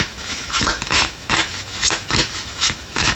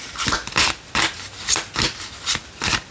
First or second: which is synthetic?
first